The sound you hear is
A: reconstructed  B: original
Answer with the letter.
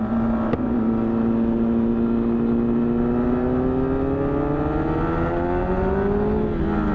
B